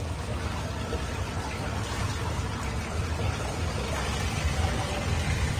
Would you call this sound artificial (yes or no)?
no